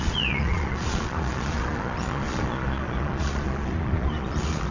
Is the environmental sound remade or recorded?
remade